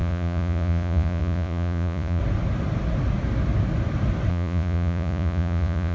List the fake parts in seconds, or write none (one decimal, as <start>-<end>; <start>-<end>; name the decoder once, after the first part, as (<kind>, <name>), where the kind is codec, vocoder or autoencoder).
0.0-2.2 (vocoder, Vocos); 4.3-5.9

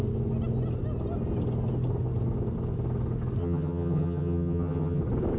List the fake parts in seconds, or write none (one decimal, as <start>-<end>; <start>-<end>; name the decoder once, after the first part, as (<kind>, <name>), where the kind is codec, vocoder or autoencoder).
3.4-5.0 (vocoder, HiFi-GAN)

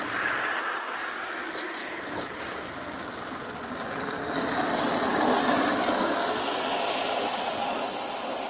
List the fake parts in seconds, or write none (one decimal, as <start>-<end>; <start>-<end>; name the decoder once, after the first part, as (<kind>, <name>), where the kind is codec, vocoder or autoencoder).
1.8-2.4 (codec, HILCodec)

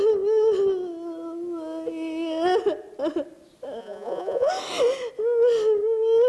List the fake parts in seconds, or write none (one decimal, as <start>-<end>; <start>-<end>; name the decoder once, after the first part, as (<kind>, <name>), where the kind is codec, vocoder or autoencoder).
3.8-4.5 (vocoder, Vocos)

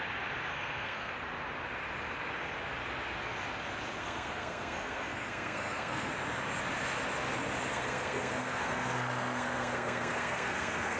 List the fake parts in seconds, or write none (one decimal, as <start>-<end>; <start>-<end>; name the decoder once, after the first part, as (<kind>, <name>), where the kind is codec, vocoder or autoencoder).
0.5-1.1 (codec, SNAC); 4.0-6.1; 7.7-11.0

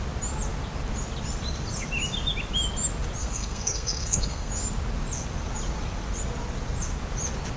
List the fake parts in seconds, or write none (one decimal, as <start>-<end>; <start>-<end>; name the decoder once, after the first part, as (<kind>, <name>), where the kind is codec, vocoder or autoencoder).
3.2-4.5 (codec, SNAC)

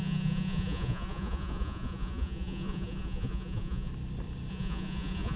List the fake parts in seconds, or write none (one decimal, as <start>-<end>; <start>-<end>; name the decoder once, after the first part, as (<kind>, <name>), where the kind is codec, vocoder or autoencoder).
0.0-3.9 (vocoder, Vocos); 4.5-5.4